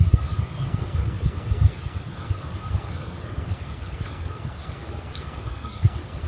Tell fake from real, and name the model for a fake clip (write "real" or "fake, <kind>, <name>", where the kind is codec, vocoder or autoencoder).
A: fake, codec, SNAC